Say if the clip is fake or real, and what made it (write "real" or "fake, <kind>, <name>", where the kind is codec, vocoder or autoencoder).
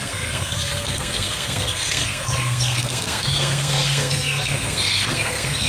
fake, codec, SNAC